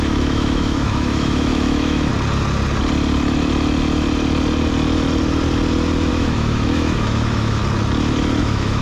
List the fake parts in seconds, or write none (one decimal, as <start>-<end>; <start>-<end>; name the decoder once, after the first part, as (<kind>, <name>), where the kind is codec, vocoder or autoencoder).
0.0-2.1 (autoencoder, DAC-VAE); 6.1-7.6; 8.4-8.8